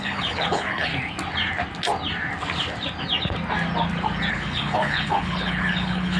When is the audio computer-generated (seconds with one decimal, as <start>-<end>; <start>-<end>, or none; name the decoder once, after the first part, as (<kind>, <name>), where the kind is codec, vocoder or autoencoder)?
0.0-0.9 (codec, HILCodec); 4.3-6.2